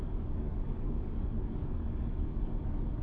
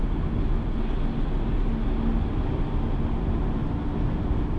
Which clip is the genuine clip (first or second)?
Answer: second